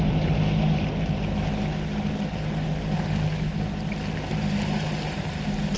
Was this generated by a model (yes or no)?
no